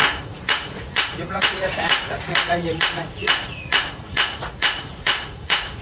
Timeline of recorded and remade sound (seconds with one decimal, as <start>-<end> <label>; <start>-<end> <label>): 0.0-5.8 remade